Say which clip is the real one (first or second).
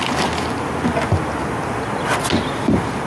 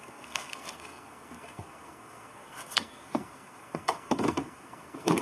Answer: first